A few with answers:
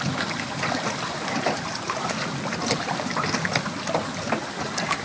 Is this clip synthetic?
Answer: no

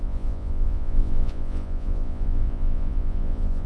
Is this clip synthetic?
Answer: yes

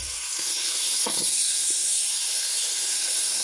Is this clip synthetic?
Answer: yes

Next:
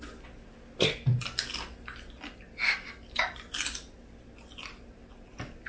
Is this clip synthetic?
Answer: no